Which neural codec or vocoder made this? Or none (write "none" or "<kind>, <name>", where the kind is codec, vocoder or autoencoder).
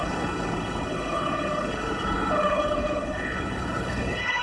codec, HILCodec